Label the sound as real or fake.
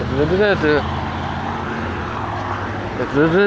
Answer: real